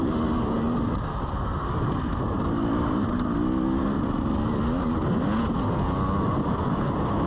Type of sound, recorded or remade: recorded